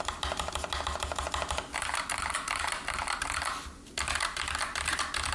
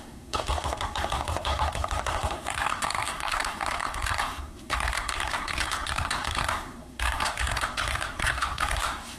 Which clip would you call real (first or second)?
first